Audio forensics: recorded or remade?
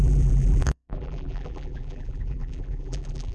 remade